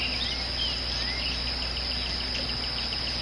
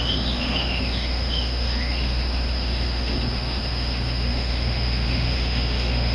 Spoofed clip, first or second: second